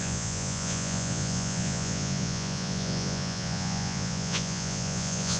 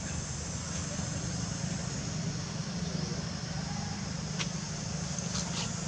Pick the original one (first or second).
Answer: second